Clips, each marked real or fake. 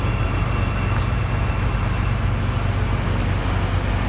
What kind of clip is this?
real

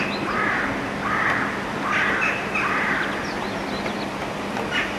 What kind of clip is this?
real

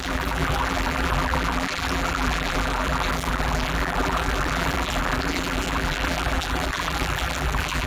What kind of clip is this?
fake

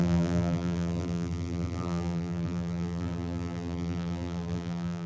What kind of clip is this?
fake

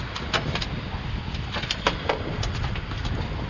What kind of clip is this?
real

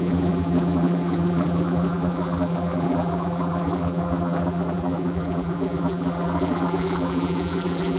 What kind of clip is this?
fake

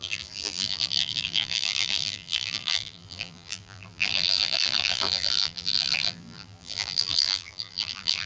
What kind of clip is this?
fake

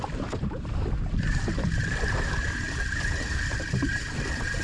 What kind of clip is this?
fake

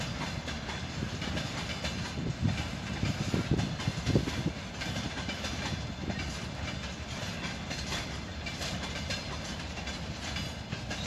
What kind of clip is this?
real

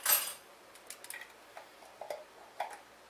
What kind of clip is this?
real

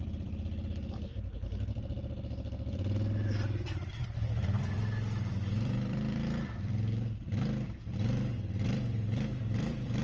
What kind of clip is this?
fake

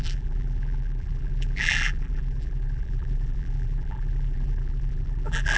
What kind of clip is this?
fake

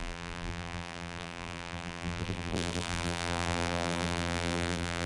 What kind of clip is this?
fake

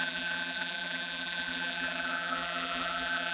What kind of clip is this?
fake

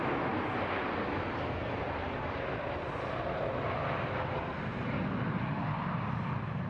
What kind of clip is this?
real